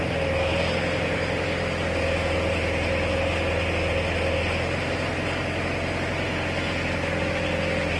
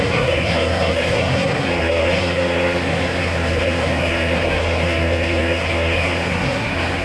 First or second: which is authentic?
first